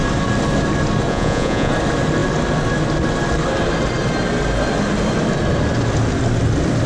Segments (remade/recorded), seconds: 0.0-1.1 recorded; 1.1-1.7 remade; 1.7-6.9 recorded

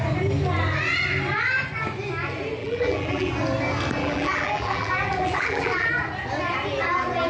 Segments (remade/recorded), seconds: 0.0-2.6 recorded; 2.6-3.3 remade; 3.3-4.0 recorded; 4.0-5.9 remade; 5.9-7.3 recorded